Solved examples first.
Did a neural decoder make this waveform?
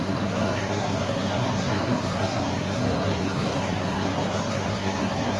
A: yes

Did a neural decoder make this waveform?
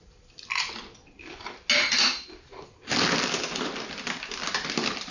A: no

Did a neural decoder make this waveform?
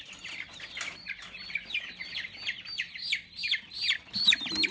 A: yes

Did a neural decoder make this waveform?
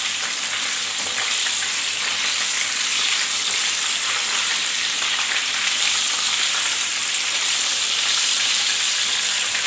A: no